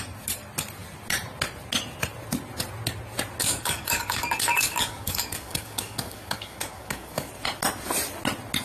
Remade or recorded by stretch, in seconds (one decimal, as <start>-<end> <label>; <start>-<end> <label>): 0.0-3.4 recorded; 3.4-7.3 remade; 7.3-8.6 recorded

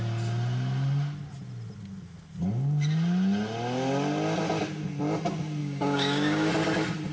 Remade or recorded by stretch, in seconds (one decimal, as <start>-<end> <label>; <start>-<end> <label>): 0.0-5.6 recorded; 5.6-6.5 remade; 6.5-7.1 recorded

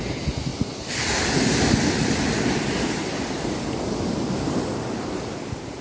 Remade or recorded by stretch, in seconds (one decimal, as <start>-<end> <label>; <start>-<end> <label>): 0.0-5.8 recorded

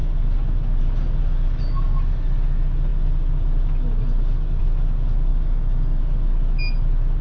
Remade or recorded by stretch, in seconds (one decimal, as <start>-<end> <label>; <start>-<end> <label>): 0.0-5.3 recorded; 5.3-6.0 remade; 6.0-7.2 recorded

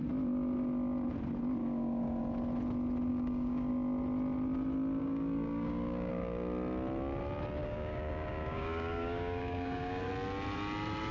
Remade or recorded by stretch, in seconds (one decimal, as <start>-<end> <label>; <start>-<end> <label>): 0.0-1.6 recorded; 1.6-2.2 remade; 2.2-3.1 recorded; 3.1-3.7 remade; 3.7-5.0 recorded; 5.0-6.1 remade; 6.1-7.6 recorded; 7.6-10.1 remade; 10.1-11.1 recorded

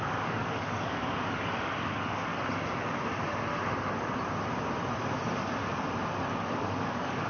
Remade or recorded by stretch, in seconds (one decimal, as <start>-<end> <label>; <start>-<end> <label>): 0.0-2.3 remade; 2.3-6.5 recorded; 6.5-7.3 remade

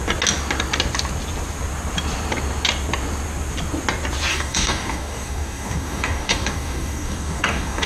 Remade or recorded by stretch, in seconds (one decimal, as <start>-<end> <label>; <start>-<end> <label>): 0.0-4.3 recorded; 4.3-7.9 remade

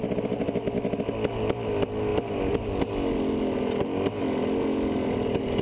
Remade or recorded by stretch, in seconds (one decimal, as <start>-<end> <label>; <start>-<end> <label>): 0.0-5.6 recorded